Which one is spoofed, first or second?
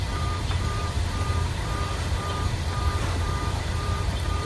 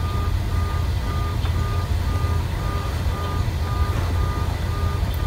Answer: first